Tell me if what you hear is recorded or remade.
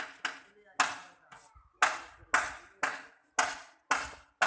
recorded